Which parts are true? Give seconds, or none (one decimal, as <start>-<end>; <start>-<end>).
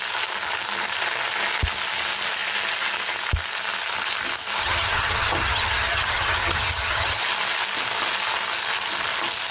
0.0-4.6; 7.2-9.5